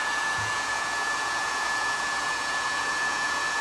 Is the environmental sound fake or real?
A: fake